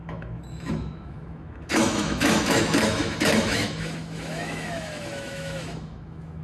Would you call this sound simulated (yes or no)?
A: yes